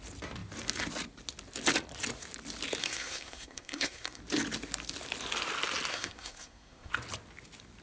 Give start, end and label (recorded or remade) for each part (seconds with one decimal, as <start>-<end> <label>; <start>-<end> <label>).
0.0-2.8 recorded; 2.8-4.2 remade; 4.2-5.9 recorded; 5.9-6.9 remade; 6.9-7.8 recorded